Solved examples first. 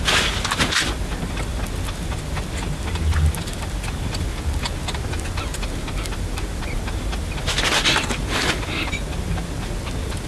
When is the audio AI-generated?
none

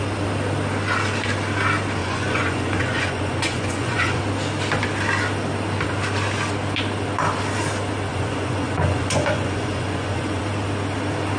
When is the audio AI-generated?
2.0-4.2 (vocoder, Vocos); 8.1-10.4